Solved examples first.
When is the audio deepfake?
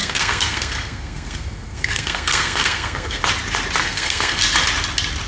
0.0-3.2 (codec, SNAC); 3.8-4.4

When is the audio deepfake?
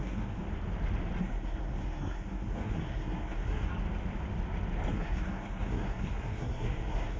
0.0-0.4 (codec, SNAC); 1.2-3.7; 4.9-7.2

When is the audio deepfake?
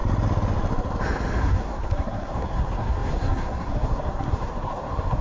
1.4-5.2 (codec, SNAC)